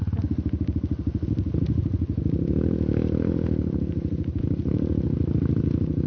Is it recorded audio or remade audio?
recorded